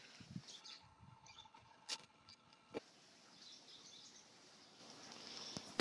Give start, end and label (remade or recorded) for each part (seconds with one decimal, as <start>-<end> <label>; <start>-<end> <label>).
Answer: 0.0-0.6 recorded; 0.6-2.8 remade; 2.8-5.8 recorded